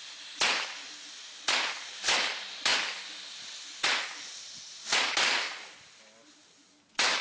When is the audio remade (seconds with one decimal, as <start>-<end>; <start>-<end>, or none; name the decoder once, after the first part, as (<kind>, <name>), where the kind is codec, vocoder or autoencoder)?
none